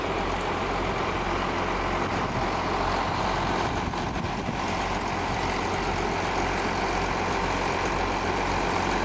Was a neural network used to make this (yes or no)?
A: no